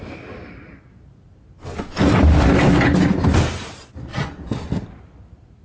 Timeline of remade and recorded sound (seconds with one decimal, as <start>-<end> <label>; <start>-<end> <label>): 0.0-5.6 recorded